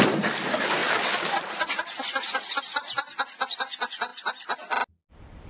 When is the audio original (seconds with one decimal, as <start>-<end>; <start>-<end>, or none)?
0.0-5.5